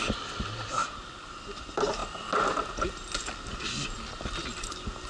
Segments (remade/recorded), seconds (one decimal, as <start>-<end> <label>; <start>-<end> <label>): 0.0-0.8 recorded; 0.8-1.3 remade; 1.3-5.1 recorded